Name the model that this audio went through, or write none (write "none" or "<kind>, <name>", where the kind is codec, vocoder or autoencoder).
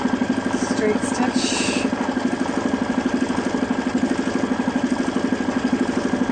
none